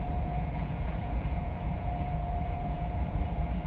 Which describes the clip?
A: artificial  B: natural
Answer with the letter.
A